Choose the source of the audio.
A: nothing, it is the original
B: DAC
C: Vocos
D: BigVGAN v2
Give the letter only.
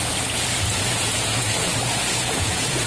C